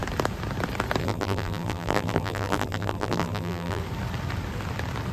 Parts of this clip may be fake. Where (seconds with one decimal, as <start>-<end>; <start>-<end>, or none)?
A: 1.0-3.8